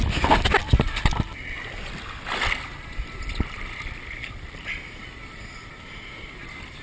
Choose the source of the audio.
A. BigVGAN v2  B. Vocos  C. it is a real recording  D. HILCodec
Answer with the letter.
C